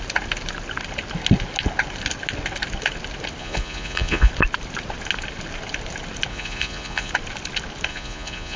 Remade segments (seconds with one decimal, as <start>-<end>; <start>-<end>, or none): 3.4-4.3; 6.3-7.1; 7.9-8.6